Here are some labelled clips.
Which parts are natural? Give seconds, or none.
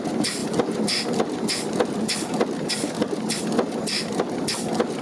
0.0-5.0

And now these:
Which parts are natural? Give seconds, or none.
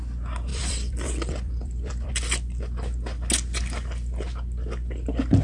0.0-0.5; 2.1-5.4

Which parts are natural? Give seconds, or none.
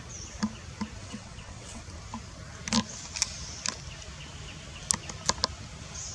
0.0-1.0; 1.8-6.1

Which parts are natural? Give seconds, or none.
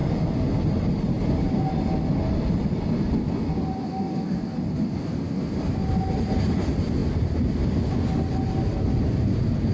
0.0-9.7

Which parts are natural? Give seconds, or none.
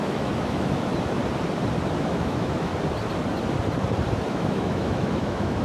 0.9-2.0; 2.7-4.3